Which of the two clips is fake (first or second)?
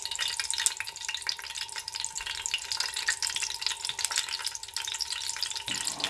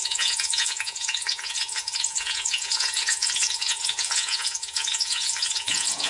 second